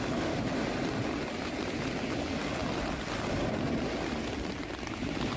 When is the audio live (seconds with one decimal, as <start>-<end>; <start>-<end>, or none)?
0.0-5.4